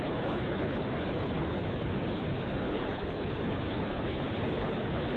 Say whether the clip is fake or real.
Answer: fake